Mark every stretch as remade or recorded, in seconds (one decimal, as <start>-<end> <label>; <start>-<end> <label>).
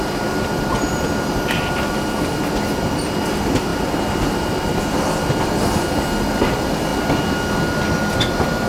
0.0-8.7 recorded